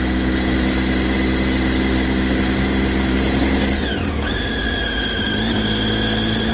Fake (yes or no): no